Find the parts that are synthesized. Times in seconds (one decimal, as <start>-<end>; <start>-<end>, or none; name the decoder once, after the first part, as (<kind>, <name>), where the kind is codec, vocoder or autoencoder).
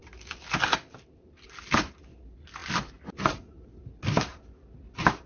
none